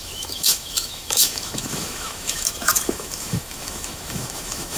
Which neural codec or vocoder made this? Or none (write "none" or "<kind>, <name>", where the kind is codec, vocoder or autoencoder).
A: autoencoder, DAC-VAE